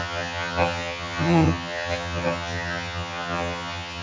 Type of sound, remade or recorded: remade